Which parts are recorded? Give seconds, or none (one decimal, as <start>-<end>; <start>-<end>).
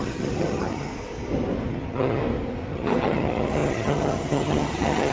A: 0.9-1.7; 2.2-2.7